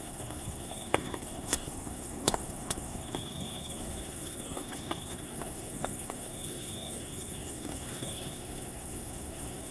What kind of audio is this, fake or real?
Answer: fake